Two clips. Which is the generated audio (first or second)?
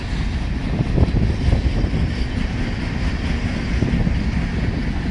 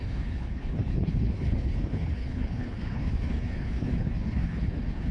second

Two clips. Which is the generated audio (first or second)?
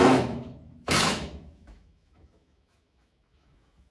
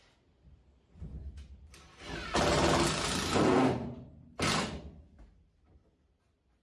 first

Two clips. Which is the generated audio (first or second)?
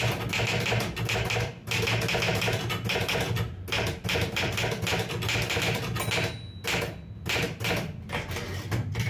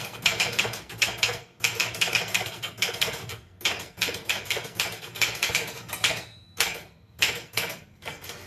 second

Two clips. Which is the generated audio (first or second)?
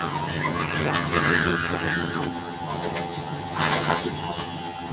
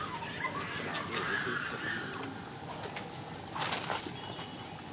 first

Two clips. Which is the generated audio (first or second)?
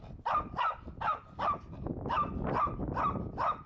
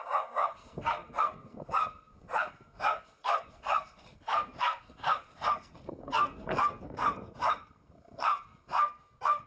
second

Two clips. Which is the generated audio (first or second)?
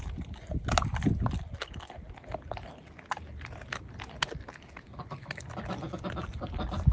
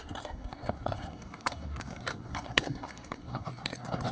second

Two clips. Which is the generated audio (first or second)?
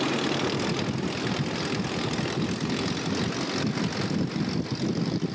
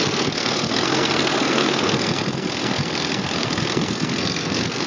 second